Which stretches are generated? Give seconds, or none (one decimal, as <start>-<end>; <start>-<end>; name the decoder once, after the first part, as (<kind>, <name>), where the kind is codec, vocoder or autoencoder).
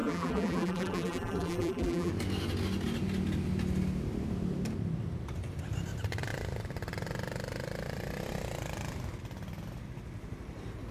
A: 0.0-2.1 (vocoder, BigVGAN v2)